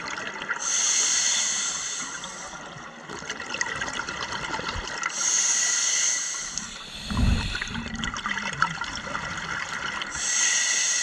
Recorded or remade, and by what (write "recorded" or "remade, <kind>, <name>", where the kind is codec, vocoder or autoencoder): recorded